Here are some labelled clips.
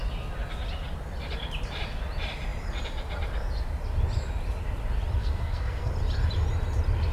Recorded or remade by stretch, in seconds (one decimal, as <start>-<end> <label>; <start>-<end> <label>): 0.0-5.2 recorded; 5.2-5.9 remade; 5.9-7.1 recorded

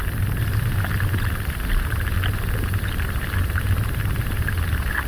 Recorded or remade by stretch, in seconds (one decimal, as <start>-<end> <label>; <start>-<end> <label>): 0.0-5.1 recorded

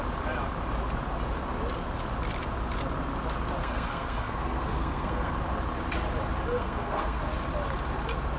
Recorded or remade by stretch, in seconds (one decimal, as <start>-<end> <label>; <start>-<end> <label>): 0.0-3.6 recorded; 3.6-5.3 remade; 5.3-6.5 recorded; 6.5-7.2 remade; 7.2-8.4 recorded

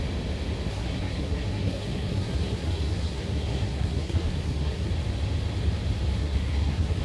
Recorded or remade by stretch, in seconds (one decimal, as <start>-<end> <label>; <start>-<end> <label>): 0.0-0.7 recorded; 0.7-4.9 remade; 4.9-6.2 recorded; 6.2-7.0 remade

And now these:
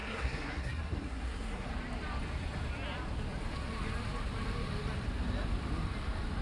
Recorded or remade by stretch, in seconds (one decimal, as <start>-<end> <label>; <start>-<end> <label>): 0.0-1.7 remade; 1.7-6.4 recorded

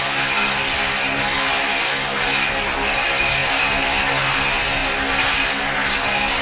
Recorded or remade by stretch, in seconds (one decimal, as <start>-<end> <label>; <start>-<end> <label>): 0.0-6.4 recorded

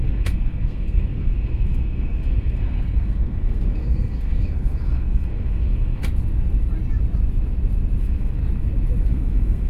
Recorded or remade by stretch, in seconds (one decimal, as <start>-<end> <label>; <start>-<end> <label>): 0.0-6.0 remade; 6.0-8.0 recorded; 8.0-8.4 remade; 8.4-9.0 recorded; 9.0-9.7 remade